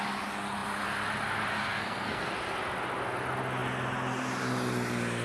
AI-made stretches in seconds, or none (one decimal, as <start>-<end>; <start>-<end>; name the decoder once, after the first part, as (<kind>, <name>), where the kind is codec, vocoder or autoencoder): 1.6-2.3 (codec, SNAC)